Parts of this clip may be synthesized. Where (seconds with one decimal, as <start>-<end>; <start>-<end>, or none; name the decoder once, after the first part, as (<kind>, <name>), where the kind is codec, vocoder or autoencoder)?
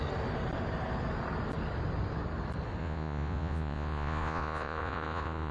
2.8-5.5 (vocoder, Vocos)